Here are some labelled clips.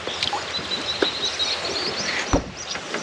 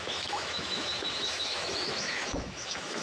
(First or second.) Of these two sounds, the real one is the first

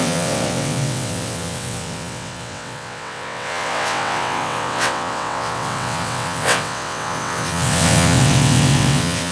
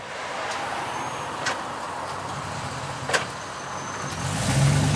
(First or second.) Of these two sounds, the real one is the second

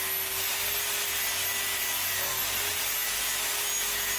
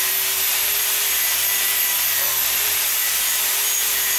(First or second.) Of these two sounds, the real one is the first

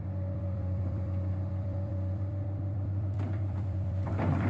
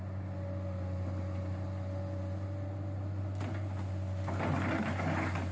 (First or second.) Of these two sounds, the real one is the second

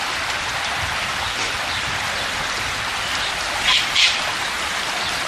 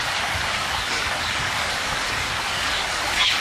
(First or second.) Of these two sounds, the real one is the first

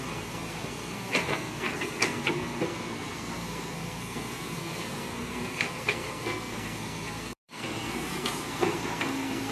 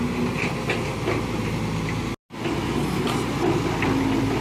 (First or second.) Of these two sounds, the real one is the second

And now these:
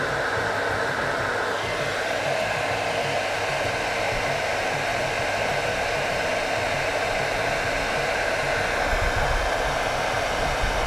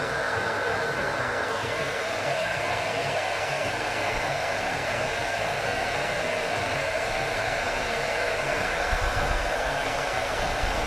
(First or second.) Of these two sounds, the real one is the first